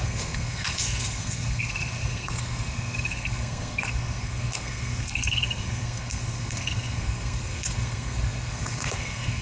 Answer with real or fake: fake